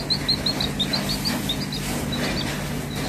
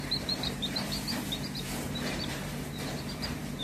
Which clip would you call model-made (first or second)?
second